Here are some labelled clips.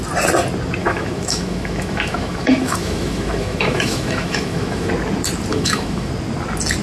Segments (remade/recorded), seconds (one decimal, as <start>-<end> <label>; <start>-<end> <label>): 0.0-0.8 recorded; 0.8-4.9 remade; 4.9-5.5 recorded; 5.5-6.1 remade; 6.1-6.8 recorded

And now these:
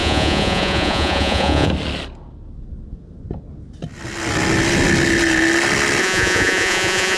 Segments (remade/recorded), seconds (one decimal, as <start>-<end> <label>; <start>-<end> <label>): 0.0-1.7 remade; 1.7-6.0 recorded; 6.0-7.2 remade

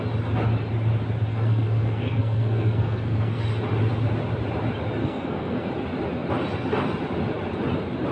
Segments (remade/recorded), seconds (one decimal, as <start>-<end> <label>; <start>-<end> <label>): 0.0-1.3 recorded; 1.3-3.4 remade; 3.4-5.0 recorded; 5.0-5.7 remade; 5.7-8.1 recorded

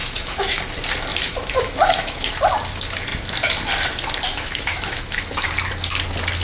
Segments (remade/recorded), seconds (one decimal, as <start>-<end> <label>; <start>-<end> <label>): 0.0-0.6 remade; 0.6-1.1 recorded; 1.1-2.3 remade; 2.3-4.3 recorded; 4.3-5.5 remade; 5.5-6.4 recorded